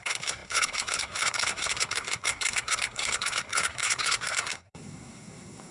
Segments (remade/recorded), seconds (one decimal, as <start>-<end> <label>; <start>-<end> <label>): 0.0-5.7 remade